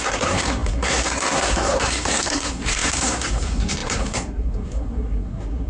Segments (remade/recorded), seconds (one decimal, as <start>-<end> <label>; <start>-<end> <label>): 0.0-5.7 remade